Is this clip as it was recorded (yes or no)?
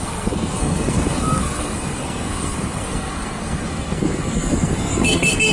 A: no